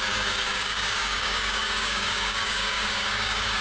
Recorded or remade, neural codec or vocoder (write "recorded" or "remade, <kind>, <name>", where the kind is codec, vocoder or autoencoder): remade, codec, DAC